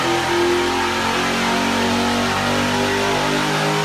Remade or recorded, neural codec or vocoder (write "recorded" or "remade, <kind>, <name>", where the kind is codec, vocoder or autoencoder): recorded